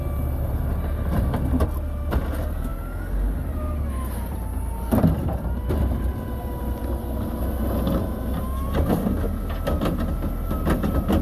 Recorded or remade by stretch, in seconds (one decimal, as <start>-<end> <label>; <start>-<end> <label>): 0.0-11.2 recorded